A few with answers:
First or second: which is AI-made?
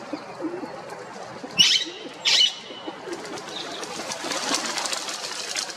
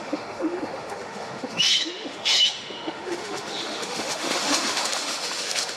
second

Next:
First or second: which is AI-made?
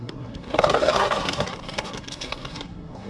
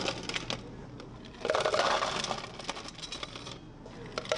first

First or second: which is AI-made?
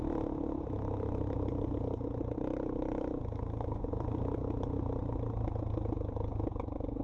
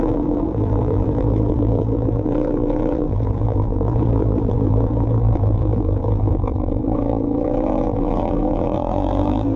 second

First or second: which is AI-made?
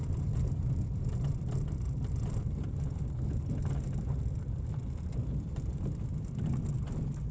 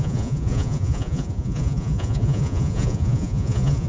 second